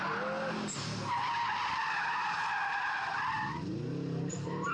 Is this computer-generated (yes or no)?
no